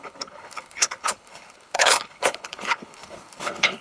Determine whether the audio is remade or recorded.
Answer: remade